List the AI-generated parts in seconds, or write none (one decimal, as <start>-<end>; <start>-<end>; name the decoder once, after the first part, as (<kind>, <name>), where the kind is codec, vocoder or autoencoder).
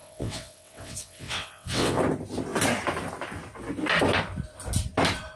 0.0-2.0 (vocoder, WaveNeXt)